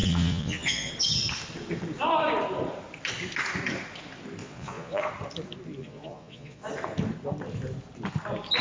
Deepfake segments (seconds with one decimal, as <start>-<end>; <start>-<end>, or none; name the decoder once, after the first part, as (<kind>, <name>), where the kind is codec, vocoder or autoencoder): 0.0-0.9 (vocoder, Vocos); 4.4-5.0; 5.8-6.7